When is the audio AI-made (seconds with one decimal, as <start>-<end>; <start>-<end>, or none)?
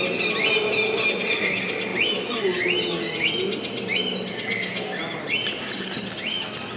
none